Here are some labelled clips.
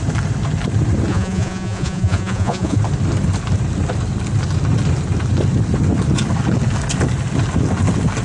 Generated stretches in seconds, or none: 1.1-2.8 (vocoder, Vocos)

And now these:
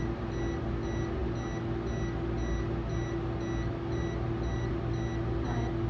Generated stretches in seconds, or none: none

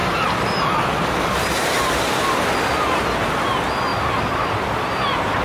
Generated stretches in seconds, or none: 0.0-2.3 (vocoder, BigVGAN v2)

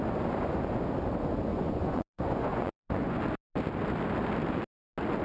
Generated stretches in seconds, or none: 1.5-3.2 (vocoder, Vocos)

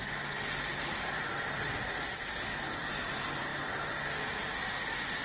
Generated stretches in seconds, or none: 0.0-3.1 (vocoder, BigVGAN v2)